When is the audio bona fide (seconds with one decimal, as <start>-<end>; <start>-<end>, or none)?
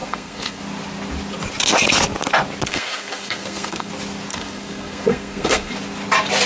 0.6-2.7; 3.9-4.3; 5.7-6.5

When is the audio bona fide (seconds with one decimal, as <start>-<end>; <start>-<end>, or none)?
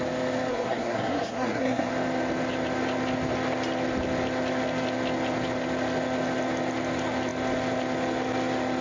0.0-0.5; 1.9-8.8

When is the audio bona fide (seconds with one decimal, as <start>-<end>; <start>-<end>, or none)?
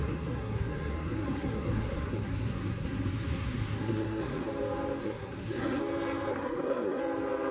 4.5-5.0; 5.8-6.3; 7.0-7.5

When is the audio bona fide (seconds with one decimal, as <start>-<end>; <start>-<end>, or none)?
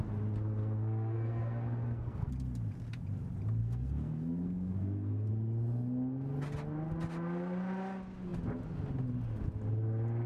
0.0-0.6; 2.3-3.6; 5.3-10.3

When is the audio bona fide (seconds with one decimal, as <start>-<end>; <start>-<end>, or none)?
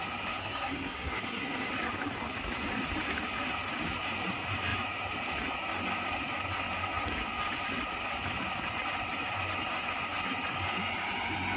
0.0-0.4; 1.7-11.6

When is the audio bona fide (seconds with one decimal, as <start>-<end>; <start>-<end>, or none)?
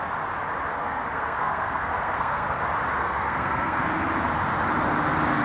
0.0-0.7; 2.6-3.0; 3.8-5.4